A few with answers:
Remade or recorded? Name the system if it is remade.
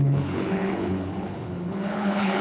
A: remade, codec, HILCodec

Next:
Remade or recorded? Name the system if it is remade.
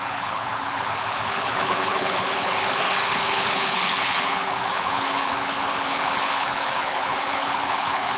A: remade, codec, HILCodec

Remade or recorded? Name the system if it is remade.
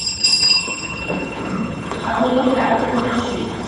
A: remade, codec, HILCodec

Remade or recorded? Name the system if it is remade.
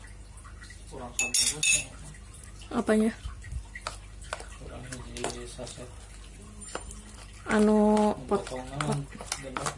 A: recorded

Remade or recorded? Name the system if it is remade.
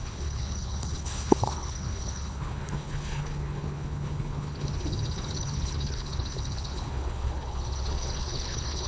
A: remade, codec, HILCodec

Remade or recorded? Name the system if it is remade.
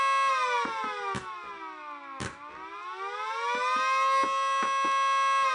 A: recorded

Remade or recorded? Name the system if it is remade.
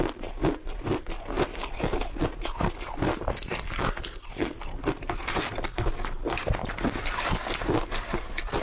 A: recorded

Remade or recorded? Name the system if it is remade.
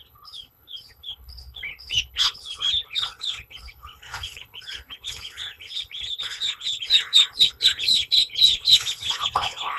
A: remade, codec, HILCodec